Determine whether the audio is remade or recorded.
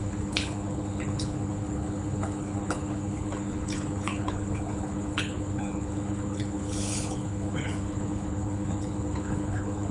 remade